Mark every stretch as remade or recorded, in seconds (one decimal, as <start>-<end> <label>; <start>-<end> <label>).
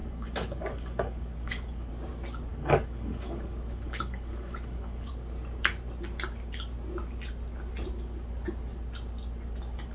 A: 0.0-1.9 remade; 1.9-2.5 recorded; 2.5-5.1 remade; 5.1-9.9 recorded